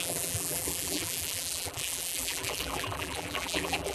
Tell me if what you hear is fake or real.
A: fake